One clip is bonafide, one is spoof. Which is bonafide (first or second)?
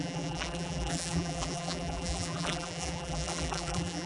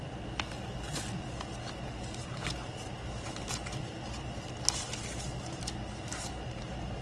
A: second